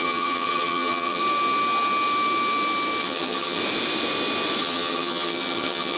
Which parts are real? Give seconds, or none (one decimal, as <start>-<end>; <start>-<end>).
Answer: 1.2-3.0; 3.6-4.6